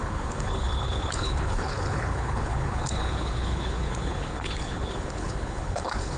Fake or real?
fake